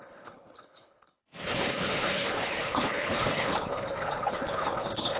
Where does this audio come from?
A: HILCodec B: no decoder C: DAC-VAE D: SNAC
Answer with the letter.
A